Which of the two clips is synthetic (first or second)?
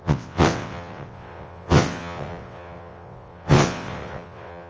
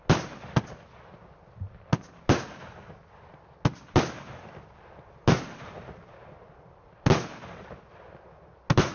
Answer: first